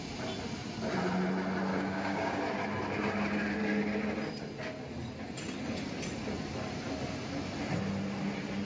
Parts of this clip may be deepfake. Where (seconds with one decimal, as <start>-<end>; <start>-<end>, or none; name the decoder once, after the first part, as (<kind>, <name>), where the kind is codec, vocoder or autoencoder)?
1.7-2.4 (codec, DAC)